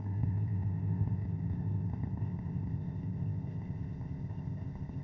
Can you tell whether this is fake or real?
fake